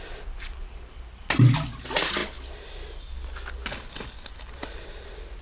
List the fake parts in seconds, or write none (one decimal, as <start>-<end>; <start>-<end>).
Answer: none